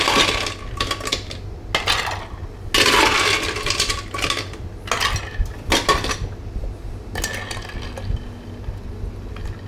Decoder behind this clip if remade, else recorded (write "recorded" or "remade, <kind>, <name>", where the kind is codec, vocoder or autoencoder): recorded